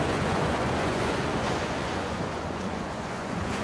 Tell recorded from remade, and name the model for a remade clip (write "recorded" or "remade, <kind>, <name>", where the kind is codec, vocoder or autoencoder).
remade, vocoder, Vocos